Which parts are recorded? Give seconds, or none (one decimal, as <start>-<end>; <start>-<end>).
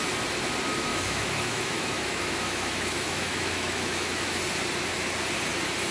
0.0-0.9; 4.4-5.9